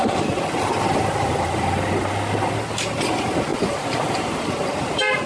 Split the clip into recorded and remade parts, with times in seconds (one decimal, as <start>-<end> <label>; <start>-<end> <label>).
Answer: 0.0-5.3 recorded